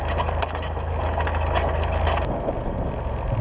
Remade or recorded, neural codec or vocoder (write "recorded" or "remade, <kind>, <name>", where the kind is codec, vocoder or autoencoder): recorded